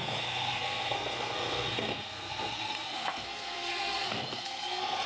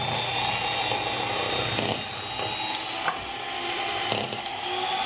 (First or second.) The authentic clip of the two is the second